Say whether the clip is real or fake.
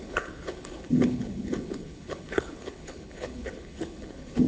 fake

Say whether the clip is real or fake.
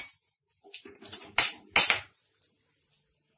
real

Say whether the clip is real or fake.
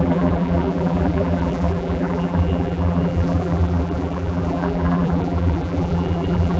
fake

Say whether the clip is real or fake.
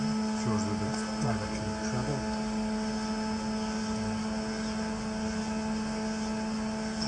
real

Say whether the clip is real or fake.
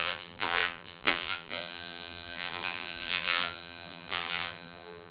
fake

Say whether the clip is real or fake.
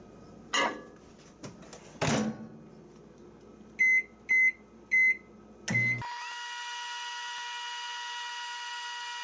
real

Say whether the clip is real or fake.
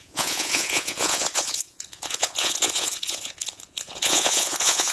fake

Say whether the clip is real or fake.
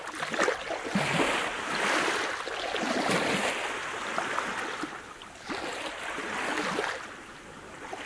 real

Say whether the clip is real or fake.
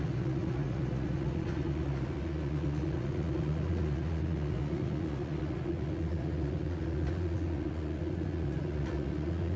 fake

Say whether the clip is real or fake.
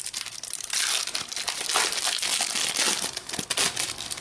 real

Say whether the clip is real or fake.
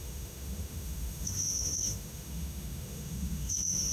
fake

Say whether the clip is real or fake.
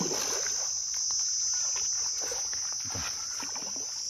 real